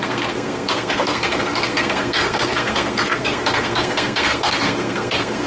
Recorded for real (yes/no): no